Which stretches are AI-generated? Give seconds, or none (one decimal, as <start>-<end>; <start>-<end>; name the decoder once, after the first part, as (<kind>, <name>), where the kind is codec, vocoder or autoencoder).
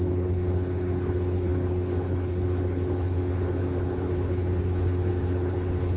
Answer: 0.0-6.0 (codec, HILCodec)